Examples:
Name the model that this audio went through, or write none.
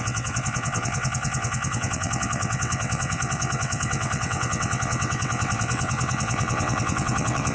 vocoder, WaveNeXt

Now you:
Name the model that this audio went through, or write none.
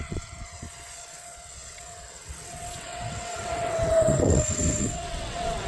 vocoder, WaveNeXt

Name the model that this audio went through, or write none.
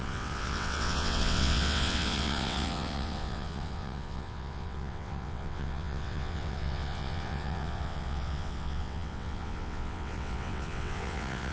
vocoder, WaveNeXt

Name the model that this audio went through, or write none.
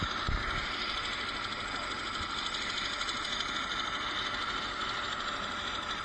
none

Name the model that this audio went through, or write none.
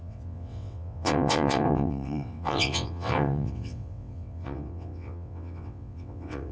vocoder, WaveNeXt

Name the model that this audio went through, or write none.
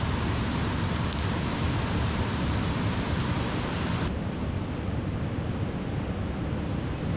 none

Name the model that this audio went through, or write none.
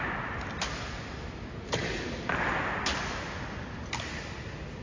none